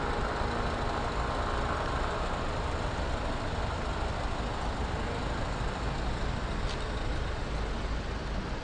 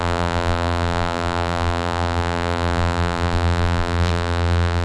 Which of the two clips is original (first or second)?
first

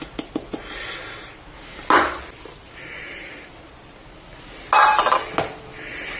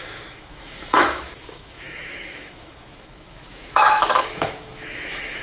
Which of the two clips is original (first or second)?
first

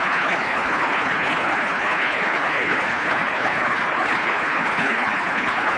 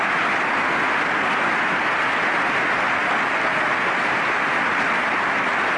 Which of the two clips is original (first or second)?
second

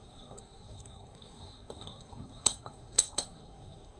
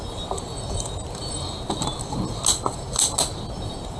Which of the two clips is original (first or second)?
second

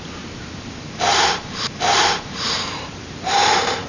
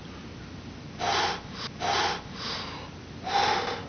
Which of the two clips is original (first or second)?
second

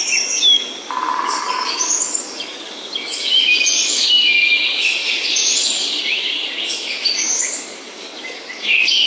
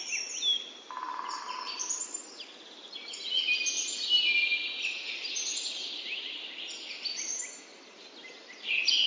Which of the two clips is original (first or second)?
second